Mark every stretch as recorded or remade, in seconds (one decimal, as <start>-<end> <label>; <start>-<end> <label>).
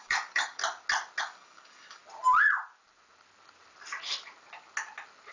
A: 0.0-0.6 remade; 0.6-1.2 recorded; 1.2-2.0 remade; 2.0-5.3 recorded